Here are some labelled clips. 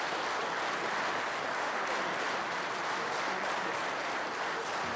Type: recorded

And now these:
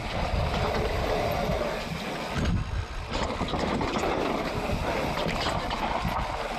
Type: recorded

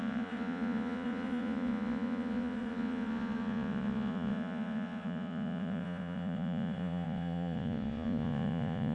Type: remade